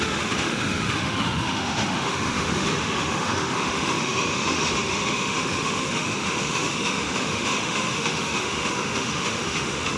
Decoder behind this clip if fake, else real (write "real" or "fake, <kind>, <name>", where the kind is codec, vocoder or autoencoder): fake, autoencoder, DAC-VAE